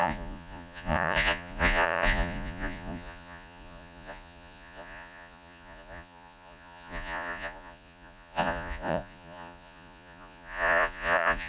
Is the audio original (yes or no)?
no